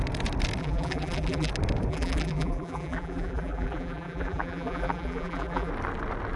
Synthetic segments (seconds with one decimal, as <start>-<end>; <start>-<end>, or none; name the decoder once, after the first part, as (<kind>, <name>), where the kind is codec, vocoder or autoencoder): 0.6-1.5 (vocoder, BigVGAN v2); 1.9-5.7